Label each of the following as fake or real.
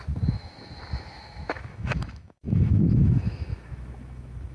fake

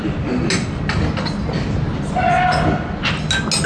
real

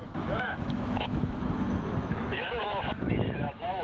fake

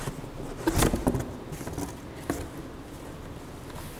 real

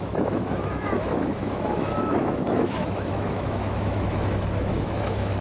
fake